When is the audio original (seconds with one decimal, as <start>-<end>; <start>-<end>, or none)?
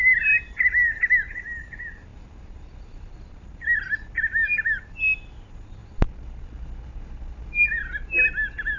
0.0-8.8